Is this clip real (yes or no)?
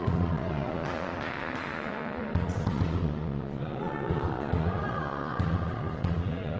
no